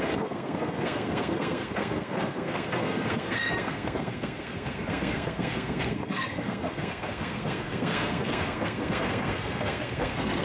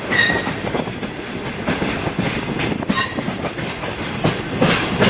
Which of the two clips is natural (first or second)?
second